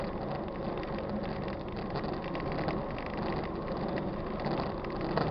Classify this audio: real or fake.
real